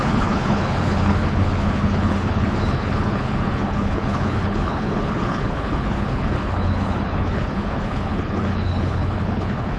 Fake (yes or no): yes